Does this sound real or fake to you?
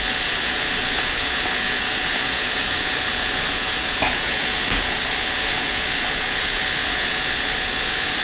fake